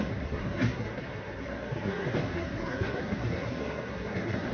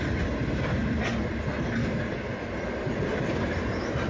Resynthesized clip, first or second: first